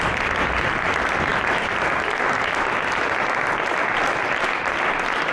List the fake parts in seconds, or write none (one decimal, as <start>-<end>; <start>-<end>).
none